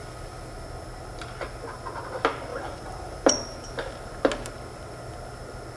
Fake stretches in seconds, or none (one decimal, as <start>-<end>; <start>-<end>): 2.5-3.3